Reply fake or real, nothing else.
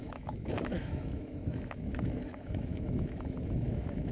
fake